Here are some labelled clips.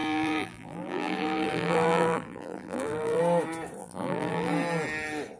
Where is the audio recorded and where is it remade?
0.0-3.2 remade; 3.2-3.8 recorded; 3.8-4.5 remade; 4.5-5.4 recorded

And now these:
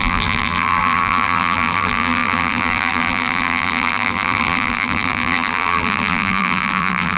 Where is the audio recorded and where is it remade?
0.0-7.2 remade

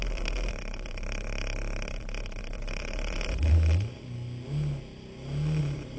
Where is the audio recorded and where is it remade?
0.0-3.5 remade; 3.5-5.6 recorded; 5.6-6.0 remade

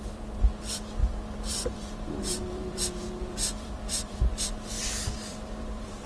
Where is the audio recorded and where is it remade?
0.0-6.1 remade